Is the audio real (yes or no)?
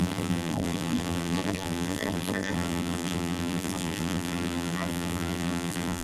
no